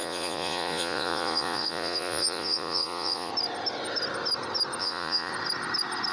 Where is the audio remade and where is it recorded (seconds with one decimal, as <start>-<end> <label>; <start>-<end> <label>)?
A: 0.0-3.3 remade; 3.3-4.8 recorded; 4.8-5.3 remade; 5.3-6.1 recorded